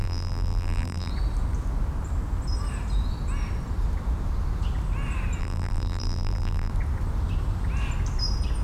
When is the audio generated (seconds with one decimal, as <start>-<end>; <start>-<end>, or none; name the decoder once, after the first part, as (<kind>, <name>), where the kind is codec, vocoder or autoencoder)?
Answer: 0.0-1.1 (vocoder, BigVGAN v2); 5.4-6.7